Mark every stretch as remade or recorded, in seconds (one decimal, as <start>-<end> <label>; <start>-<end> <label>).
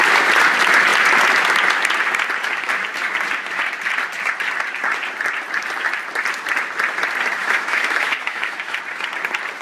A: 0.0-7.4 recorded; 7.4-8.8 remade; 8.8-9.6 recorded